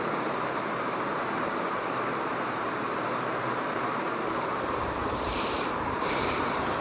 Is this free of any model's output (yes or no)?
no